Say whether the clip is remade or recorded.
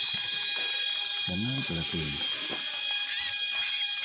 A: recorded